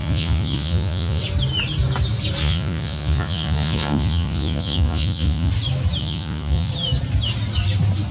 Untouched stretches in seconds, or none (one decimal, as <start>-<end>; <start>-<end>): 1.2-2.4; 5.5-6.0; 6.7-8.1